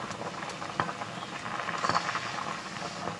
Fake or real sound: real